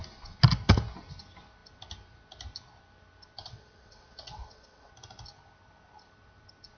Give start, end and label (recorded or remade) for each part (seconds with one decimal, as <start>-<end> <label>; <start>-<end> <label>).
0.0-3.4 recorded; 3.4-4.9 remade; 4.9-6.8 recorded